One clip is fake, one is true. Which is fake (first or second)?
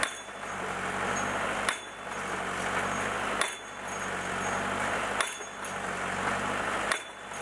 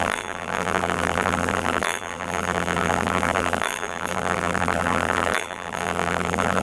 second